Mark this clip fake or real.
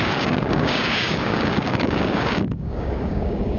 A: fake